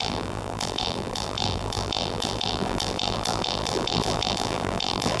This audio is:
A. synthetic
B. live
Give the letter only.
A